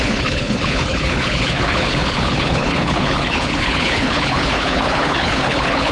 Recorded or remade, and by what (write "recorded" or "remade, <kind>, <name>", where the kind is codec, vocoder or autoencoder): remade, codec, HILCodec